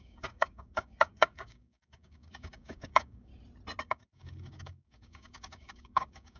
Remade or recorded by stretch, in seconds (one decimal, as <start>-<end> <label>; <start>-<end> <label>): 0.0-3.3 remade; 3.3-3.8 recorded; 3.8-6.4 remade